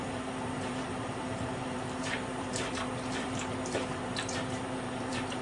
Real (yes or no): no